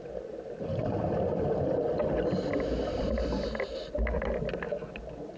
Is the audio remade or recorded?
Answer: recorded